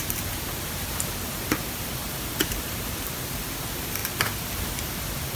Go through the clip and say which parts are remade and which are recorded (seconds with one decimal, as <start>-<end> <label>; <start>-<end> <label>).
0.0-5.4 remade